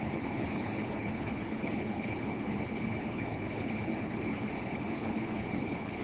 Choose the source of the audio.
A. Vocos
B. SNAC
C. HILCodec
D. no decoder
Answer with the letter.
C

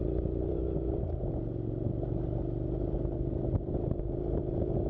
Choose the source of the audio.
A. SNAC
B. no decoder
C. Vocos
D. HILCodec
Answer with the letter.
B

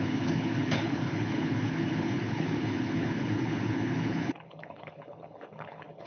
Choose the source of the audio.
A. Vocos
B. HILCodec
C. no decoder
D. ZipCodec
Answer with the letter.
B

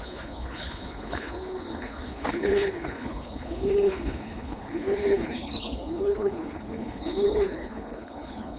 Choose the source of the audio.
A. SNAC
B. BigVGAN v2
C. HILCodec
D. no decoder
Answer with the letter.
C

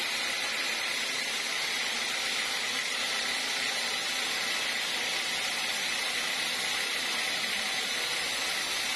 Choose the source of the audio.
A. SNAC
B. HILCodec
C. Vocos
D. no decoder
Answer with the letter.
D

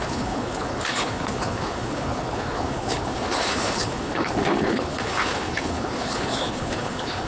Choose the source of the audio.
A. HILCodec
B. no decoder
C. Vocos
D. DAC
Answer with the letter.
A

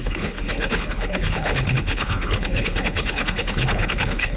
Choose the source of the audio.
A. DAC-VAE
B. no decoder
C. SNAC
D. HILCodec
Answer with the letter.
D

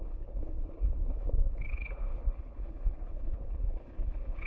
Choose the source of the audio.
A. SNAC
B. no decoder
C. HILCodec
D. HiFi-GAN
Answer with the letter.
C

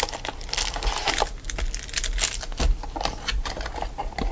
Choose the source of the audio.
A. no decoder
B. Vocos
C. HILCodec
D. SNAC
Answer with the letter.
A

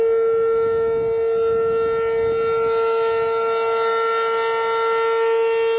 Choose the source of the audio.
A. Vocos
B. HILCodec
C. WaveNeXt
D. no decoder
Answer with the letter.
D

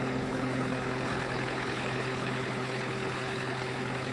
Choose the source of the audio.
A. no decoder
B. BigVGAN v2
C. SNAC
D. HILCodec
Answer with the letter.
D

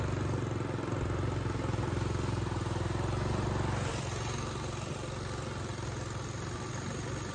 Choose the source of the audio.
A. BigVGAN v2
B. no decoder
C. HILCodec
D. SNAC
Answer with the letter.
B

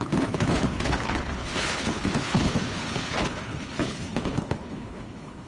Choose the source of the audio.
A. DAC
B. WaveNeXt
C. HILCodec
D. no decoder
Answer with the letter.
C